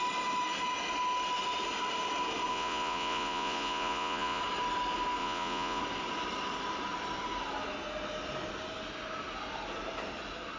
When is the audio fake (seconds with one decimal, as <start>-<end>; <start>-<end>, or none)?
2.5-4.4; 5.2-5.8